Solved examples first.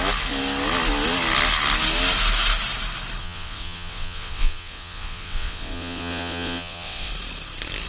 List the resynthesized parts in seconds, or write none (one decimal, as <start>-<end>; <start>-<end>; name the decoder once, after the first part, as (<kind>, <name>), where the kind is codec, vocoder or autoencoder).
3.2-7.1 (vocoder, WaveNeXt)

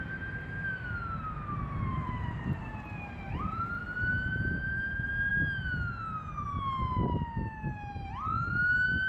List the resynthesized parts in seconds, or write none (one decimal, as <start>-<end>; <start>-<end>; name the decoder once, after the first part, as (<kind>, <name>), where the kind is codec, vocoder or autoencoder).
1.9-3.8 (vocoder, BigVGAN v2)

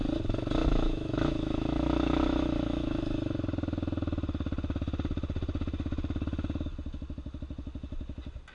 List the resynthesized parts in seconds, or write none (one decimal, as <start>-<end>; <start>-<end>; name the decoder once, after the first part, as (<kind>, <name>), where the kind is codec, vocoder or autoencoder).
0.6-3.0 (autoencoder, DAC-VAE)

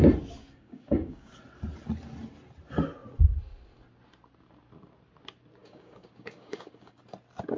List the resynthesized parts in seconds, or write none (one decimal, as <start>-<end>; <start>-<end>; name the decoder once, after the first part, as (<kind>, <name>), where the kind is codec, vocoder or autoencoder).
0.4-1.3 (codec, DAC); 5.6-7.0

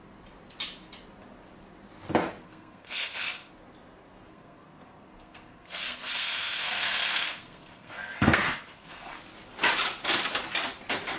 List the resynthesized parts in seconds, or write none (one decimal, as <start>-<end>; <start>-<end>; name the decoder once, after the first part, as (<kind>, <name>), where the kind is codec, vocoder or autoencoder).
2.4-3.5 (codec, SNAC); 4.3-9.2

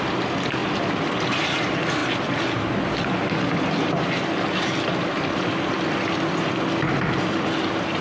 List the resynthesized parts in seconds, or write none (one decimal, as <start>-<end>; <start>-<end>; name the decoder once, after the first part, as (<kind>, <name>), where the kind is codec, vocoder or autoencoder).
none

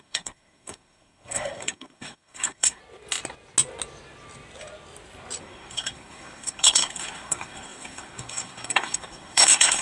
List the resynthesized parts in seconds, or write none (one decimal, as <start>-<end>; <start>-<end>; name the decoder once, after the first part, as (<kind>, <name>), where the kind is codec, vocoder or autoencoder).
0.0-2.8 (codec, SNAC); 5.4-9.8

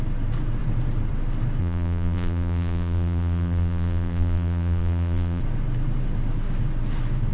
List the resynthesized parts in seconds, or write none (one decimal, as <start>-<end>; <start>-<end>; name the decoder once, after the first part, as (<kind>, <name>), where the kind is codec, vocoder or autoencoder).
1.6-5.4 (vocoder, BigVGAN v2)